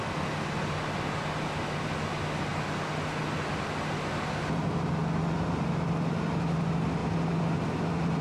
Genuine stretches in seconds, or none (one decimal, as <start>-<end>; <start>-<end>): 0.0-8.2